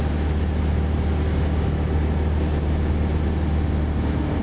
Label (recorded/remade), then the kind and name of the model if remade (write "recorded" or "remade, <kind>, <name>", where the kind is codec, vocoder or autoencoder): recorded